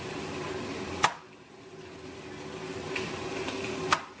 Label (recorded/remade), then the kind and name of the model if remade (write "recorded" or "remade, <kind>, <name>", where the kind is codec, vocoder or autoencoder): recorded